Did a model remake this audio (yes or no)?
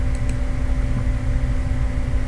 no